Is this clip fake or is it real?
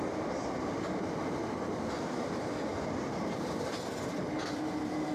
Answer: real